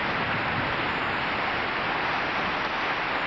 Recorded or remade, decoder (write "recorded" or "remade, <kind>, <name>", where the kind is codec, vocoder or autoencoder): recorded